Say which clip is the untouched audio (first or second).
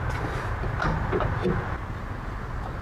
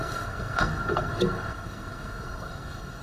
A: first